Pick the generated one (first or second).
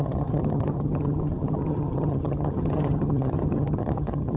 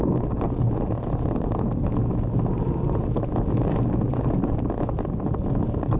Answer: first